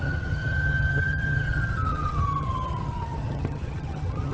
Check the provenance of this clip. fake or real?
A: fake